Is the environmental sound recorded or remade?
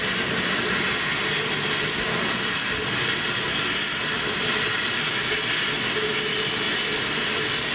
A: recorded